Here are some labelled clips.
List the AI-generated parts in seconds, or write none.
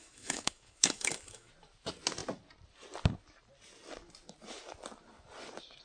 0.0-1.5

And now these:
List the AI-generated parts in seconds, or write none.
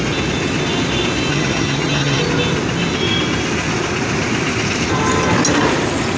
1.3-2.2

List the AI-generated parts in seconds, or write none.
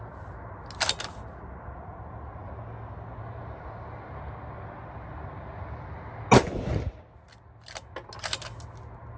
none